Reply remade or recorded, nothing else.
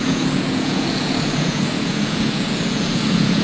remade